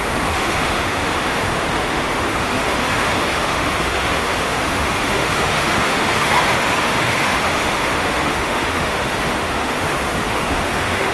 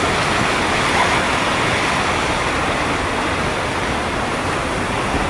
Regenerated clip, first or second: first